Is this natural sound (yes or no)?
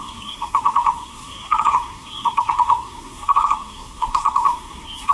no